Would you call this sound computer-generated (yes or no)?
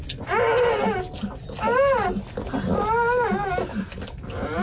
no